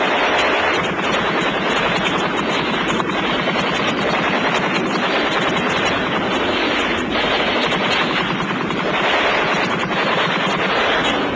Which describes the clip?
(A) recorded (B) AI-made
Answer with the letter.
A